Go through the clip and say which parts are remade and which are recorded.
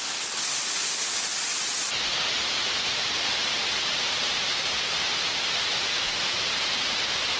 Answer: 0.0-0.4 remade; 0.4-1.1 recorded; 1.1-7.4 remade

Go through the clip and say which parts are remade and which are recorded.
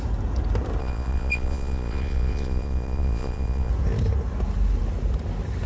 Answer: 0.0-0.8 recorded; 0.8-3.7 remade; 3.7-5.7 recorded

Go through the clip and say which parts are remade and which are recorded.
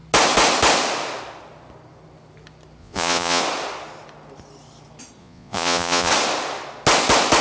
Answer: 0.0-2.8 recorded; 2.8-3.4 remade; 3.4-5.2 recorded; 5.2-6.1 remade; 6.1-7.4 recorded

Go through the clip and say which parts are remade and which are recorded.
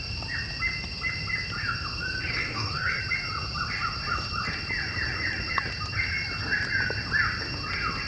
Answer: 0.0-2.3 recorded; 2.3-3.0 remade; 3.0-8.1 recorded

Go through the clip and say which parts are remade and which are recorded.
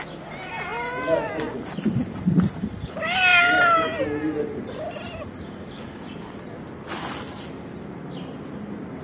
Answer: 0.0-9.0 recorded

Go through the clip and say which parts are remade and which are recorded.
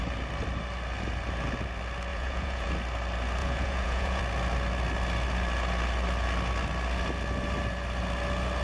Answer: 0.0-2.1 recorded; 2.1-2.7 remade; 2.7-3.4 recorded; 3.4-4.2 remade; 4.2-8.6 recorded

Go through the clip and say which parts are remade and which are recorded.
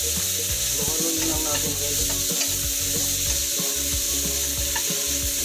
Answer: 0.0-5.4 recorded